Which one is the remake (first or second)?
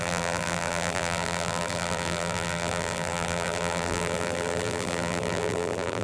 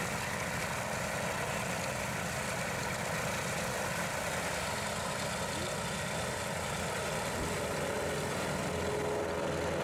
first